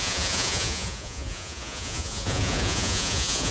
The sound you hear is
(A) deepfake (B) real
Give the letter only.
A